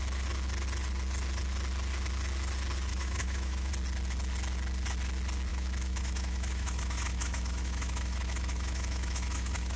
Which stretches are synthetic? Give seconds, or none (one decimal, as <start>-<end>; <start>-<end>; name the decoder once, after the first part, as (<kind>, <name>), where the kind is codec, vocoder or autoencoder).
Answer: 2.9-3.7 (autoencoder, DAC-VAE); 5.5-9.8